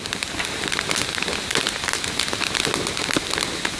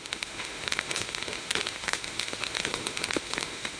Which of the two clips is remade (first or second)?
second